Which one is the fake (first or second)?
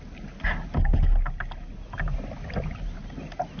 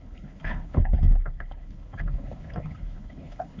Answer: second